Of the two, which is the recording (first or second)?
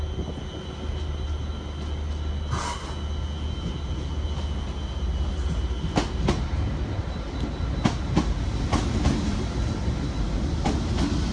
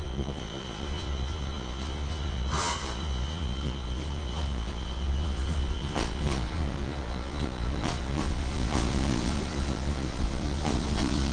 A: first